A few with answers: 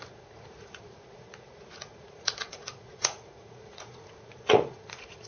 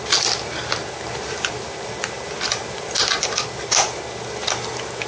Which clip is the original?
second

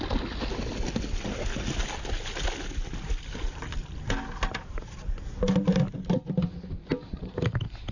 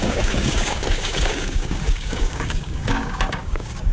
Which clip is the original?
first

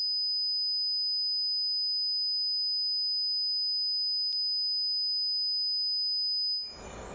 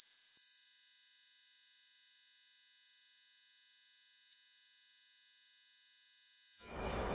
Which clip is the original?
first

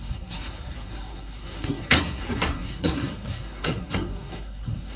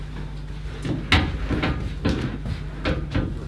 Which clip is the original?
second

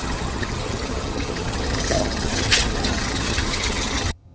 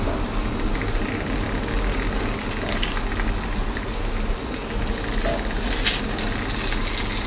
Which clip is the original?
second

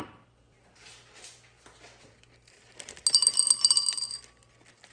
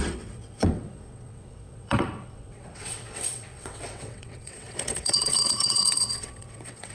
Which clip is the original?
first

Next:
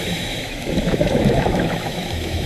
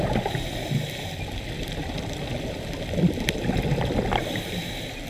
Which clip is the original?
second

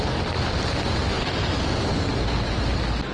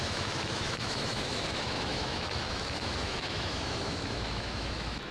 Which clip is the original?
first